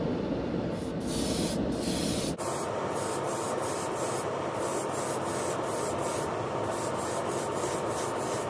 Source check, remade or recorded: recorded